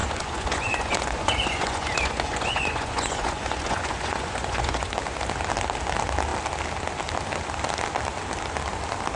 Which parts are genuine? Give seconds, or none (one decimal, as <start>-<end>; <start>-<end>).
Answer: 4.9-9.2